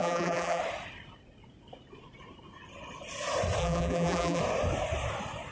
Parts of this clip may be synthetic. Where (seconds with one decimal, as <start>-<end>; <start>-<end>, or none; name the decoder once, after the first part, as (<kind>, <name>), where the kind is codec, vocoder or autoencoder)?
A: 0.0-0.6 (vocoder, BigVGAN v2); 3.6-4.4